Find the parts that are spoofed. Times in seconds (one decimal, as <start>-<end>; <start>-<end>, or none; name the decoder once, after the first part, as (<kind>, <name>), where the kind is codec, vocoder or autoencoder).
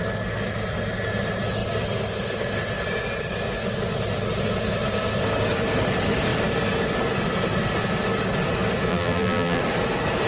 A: 8.9-9.6 (vocoder, BigVGAN v2)